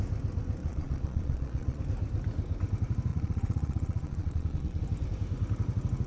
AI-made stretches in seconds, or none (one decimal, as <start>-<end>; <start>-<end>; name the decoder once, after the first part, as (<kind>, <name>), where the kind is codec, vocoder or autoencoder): 0.6-1.8 (vocoder, Vocos); 3.1-4.8